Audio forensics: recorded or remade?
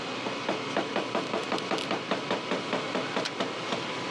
recorded